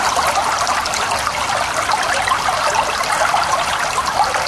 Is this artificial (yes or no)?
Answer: no